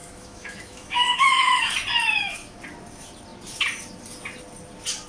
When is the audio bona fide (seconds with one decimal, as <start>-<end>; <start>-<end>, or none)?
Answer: 1.6-2.0; 2.6-5.1